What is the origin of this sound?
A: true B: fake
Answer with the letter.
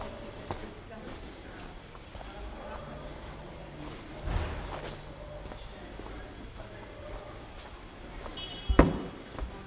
A